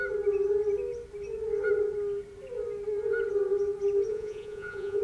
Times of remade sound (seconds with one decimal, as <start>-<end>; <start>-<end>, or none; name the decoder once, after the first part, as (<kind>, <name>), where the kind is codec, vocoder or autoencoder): 4.1-5.0 (vocoder, Vocos)